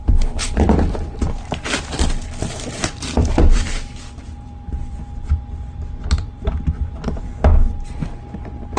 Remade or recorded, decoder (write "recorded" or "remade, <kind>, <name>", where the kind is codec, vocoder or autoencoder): remade, vocoder, BigVGAN v2